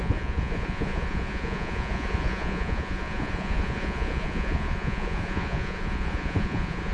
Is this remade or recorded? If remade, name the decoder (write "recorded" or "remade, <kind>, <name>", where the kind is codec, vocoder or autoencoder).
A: remade, vocoder, Vocos